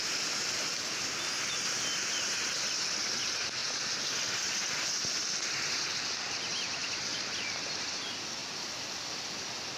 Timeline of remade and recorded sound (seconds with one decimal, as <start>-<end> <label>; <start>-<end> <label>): 0.0-6.8 recorded; 6.8-8.0 remade; 8.0-8.4 recorded; 8.4-9.4 remade; 9.4-9.8 recorded